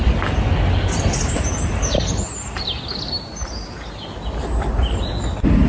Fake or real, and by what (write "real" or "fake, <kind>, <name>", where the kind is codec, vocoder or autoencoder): real